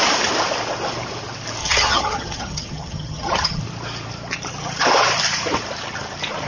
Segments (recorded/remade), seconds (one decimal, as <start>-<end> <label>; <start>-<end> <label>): 0.0-1.6 recorded; 1.6-3.6 remade; 3.6-6.5 recorded